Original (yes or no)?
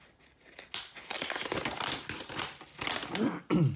yes